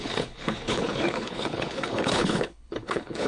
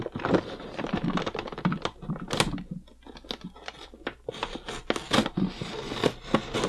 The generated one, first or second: first